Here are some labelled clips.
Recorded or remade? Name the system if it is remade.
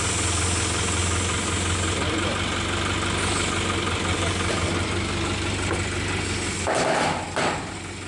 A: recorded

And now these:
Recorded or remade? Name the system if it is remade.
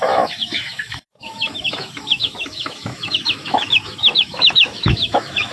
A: remade, autoencoder, DAC-VAE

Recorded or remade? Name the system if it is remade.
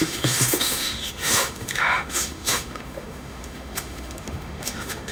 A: remade, autoencoder, DAC-VAE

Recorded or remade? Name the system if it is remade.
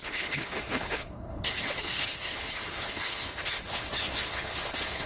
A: remade, codec, HILCodec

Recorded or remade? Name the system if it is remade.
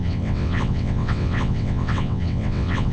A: remade, vocoder, WaveNeXt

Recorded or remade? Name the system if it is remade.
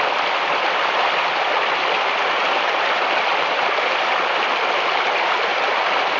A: remade, vocoder, BigVGAN v2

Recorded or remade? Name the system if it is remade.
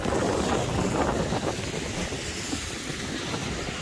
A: recorded